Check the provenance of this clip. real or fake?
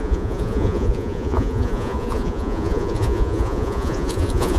fake